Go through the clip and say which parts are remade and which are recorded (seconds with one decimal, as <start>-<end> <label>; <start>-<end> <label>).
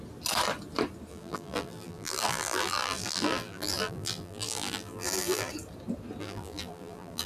0.0-1.1 recorded; 1.1-5.5 remade; 5.5-6.2 recorded; 6.2-7.3 remade